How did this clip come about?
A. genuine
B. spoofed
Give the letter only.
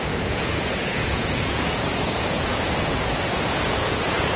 B